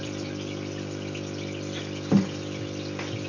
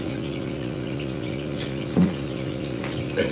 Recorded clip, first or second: first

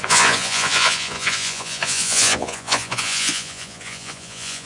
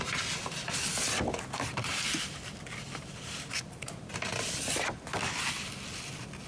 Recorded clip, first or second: second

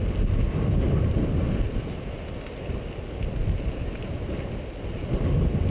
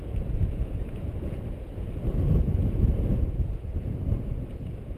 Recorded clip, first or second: first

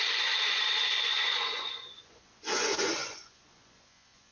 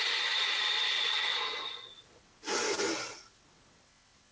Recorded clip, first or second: second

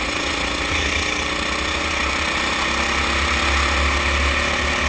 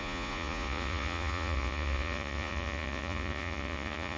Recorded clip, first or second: first